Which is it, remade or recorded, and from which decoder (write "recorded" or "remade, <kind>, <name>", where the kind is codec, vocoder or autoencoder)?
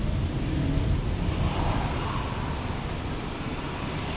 remade, vocoder, BigVGAN v2